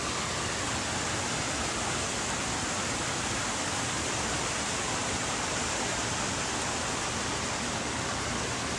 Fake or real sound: real